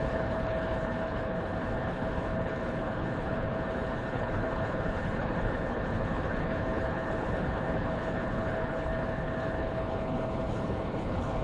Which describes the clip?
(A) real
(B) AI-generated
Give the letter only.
B